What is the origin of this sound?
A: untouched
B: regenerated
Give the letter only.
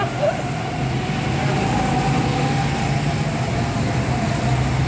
A